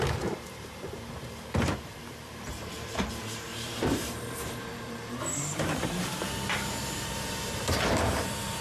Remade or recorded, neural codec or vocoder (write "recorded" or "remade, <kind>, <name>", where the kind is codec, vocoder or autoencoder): remade, vocoder, BigVGAN v2